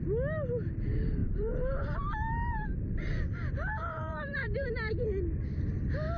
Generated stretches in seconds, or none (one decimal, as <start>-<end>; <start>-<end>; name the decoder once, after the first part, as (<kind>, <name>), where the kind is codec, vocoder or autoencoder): 1.2-4.9 (vocoder, BigVGAN v2)

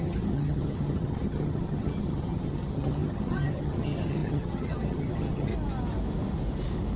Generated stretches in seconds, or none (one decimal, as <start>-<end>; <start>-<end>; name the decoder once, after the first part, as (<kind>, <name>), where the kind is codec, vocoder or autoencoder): 0.0-5.5 (vocoder, HiFi-GAN)

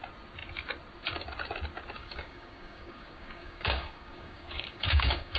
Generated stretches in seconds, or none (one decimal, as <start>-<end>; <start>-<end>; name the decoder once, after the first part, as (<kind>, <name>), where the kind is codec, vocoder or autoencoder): 2.0-5.4 (codec, DAC)

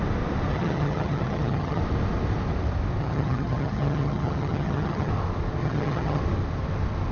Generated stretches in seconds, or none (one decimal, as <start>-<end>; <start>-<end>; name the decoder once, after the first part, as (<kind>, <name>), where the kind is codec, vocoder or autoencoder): 0.5-1.8 (vocoder, HiFi-GAN); 3.0-5.1; 5.6-6.2

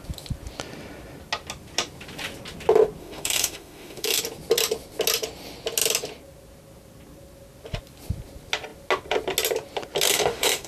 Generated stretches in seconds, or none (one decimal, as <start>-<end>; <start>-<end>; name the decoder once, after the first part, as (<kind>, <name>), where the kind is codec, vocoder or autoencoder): 3.0-4.2 (autoencoder, DAC-VAE); 10.1-10.7

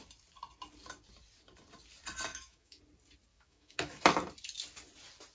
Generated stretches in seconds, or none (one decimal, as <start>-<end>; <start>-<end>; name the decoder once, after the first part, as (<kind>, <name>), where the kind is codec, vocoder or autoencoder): 2.3-2.8 (autoencoder, DAC-VAE); 3.3-4.0

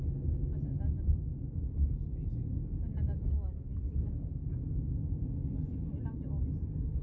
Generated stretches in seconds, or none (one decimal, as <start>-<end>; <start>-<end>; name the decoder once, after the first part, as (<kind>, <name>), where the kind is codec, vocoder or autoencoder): 2.5-4.2 (autoencoder, DAC-VAE)